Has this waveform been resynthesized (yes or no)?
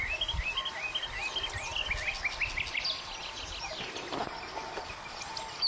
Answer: no